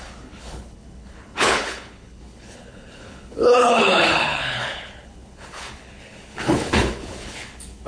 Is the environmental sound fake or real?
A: fake